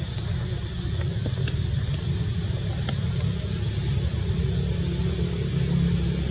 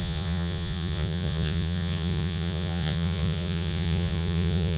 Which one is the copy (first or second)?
second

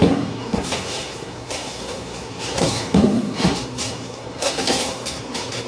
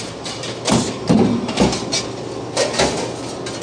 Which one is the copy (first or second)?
first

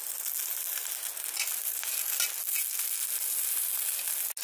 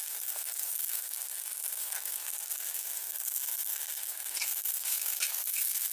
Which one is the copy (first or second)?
second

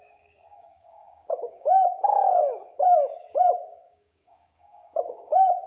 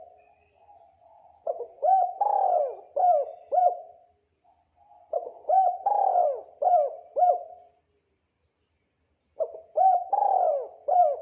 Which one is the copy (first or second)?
first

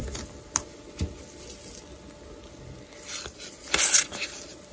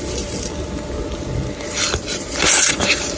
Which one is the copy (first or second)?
second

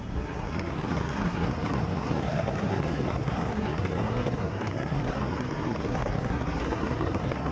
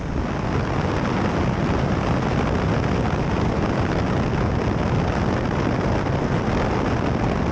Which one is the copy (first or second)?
first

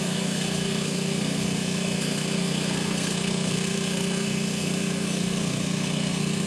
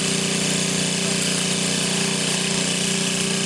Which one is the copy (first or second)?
first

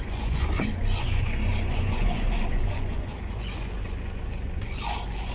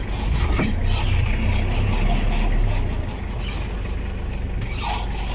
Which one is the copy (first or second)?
first